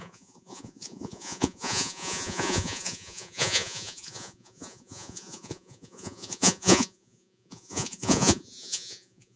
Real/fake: fake